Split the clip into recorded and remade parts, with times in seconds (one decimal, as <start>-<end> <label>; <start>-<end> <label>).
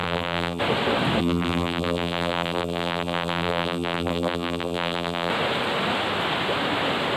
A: 0.0-0.6 remade; 0.6-1.2 recorded; 1.2-5.3 remade; 5.3-7.2 recorded